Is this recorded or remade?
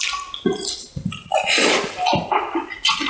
recorded